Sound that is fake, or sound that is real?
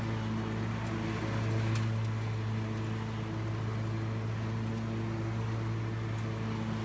real